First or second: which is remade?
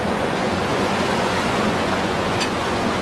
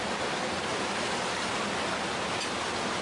first